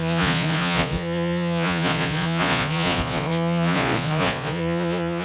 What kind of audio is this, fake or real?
fake